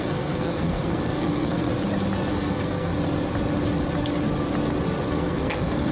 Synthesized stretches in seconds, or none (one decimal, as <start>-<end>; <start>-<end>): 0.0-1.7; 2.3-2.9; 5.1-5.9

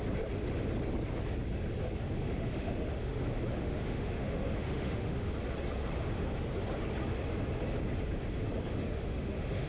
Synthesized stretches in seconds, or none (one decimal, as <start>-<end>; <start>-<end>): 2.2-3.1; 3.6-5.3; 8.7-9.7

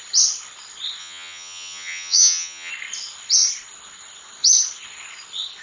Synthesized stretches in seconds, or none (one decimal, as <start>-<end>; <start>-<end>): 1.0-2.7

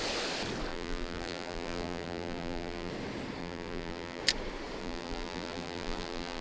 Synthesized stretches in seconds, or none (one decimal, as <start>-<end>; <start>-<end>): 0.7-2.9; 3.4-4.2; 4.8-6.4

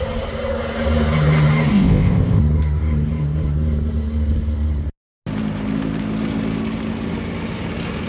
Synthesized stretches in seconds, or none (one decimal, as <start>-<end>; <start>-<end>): 1.7-2.4

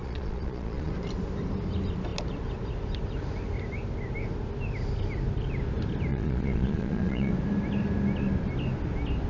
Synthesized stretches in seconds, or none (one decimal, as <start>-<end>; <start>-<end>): 0.0-0.9; 6.1-7.3